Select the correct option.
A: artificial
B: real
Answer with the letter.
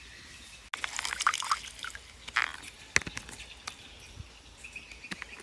B